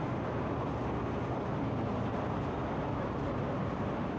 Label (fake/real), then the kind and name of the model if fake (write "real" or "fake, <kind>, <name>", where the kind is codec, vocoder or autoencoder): real